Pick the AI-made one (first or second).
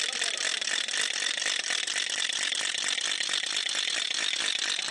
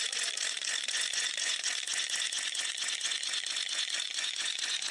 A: second